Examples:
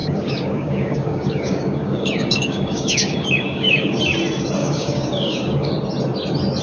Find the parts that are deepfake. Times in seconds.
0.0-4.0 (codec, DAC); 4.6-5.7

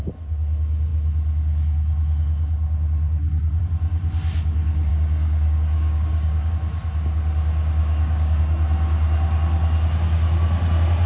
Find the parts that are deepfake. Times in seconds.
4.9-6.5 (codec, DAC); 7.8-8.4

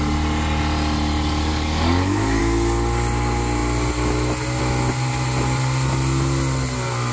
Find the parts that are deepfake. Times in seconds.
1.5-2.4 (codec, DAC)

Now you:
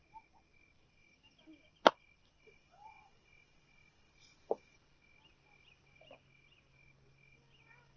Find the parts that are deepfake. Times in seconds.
none